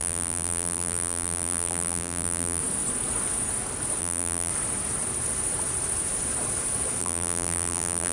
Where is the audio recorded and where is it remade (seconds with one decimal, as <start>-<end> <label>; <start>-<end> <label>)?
0.0-2.6 remade; 2.6-4.0 recorded; 4.0-4.5 remade; 4.5-7.0 recorded; 7.0-8.1 remade